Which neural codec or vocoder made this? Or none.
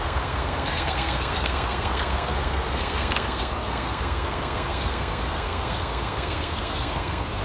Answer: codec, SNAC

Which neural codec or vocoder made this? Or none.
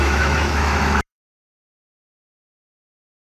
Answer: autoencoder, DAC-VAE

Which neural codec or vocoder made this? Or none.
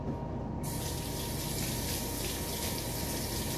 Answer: none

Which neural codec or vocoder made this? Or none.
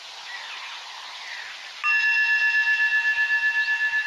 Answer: none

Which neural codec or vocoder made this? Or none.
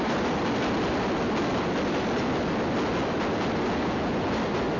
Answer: none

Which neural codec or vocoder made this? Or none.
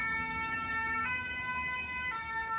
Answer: autoencoder, DAC-VAE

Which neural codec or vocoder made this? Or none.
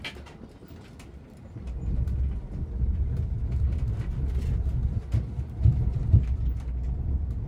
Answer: none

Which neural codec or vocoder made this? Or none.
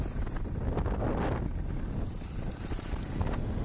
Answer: none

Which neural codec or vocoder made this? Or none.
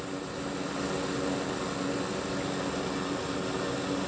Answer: none